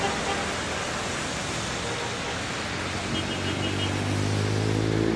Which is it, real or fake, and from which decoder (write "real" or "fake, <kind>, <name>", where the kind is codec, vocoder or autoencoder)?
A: real